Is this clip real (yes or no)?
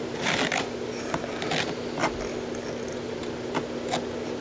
yes